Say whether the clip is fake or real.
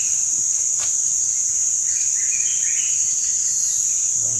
real